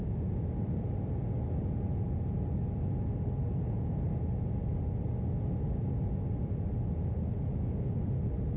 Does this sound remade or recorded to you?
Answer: recorded